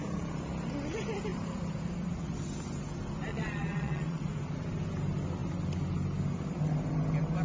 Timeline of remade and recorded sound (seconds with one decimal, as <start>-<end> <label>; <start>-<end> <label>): 0.0-3.3 recorded; 3.3-4.2 remade; 4.2-7.4 recorded